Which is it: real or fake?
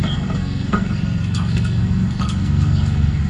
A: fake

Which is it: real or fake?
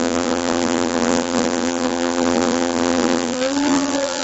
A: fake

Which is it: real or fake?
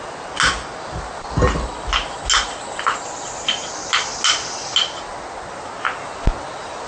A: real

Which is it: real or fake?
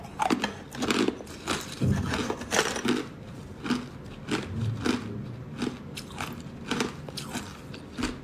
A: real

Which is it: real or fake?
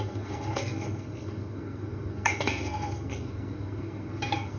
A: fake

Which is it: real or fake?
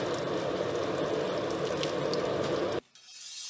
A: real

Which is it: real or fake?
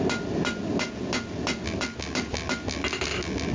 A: real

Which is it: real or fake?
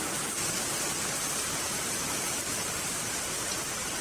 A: real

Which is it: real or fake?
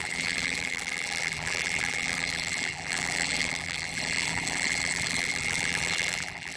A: fake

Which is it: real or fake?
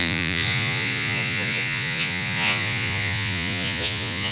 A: fake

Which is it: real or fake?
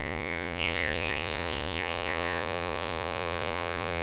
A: fake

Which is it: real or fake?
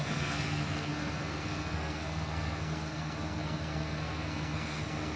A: fake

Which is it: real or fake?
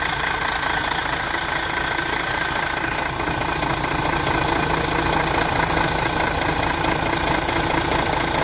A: real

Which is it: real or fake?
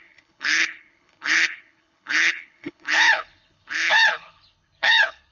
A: fake